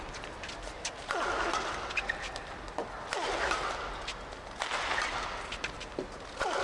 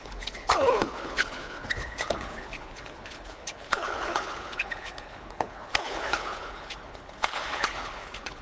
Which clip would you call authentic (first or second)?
first